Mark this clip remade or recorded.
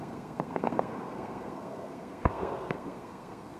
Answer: remade